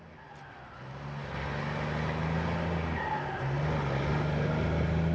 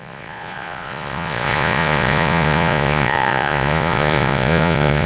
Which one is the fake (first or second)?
second